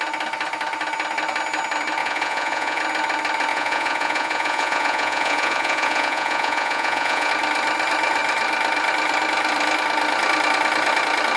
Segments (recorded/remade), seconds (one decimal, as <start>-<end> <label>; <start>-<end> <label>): 0.0-2.0 recorded; 2.0-2.8 remade; 2.8-3.5 recorded; 3.5-7.3 remade; 7.3-11.4 recorded